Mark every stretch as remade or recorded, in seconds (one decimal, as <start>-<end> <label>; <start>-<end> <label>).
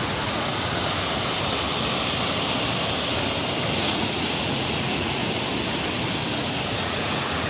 0.0-0.5 remade; 0.5-3.7 recorded; 3.7-5.2 remade; 5.2-6.8 recorded; 6.8-7.5 remade